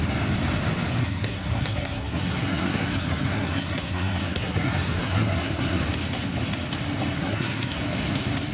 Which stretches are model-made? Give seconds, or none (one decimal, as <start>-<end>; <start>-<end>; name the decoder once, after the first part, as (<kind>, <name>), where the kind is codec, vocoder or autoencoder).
1.0-5.8 (codec, SNAC); 7.1-7.8